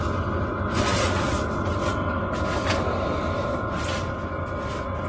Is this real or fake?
real